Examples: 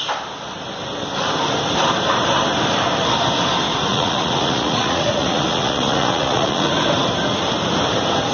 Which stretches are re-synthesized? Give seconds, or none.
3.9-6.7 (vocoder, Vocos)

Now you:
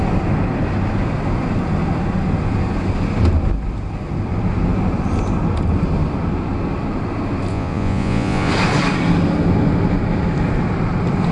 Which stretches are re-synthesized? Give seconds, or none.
7.5-8.5 (vocoder, Vocos)